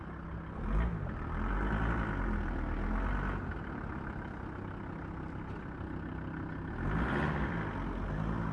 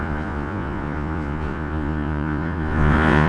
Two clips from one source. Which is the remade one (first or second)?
second